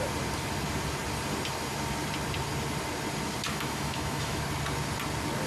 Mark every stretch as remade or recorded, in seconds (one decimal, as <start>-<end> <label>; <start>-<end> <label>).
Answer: 0.0-3.5 recorded; 3.5-4.4 remade; 4.4-5.5 recorded